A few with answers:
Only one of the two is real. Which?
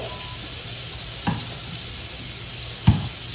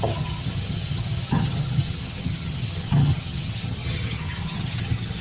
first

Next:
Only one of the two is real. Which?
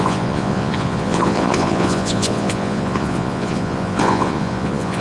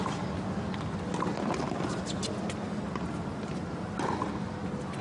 second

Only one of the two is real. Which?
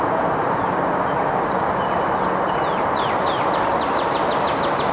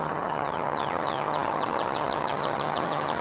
first